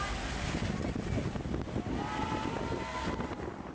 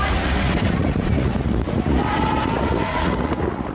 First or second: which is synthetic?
second